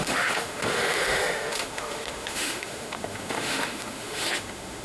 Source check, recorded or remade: remade